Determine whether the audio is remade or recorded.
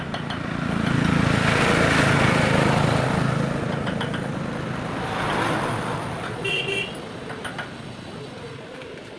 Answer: recorded